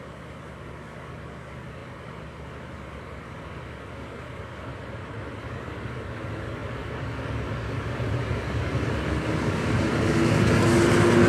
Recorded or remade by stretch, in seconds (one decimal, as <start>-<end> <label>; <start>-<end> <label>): 0.0-4.7 remade; 4.7-5.4 recorded; 5.4-11.3 remade